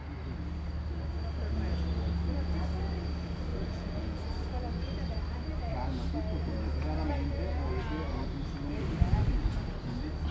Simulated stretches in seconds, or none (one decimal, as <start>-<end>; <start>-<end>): 3.5-4.2